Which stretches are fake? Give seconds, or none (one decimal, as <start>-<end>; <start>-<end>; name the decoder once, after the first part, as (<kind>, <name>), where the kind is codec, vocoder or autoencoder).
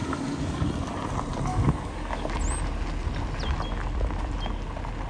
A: 0.0-0.7 (codec, DAC); 1.5-2.3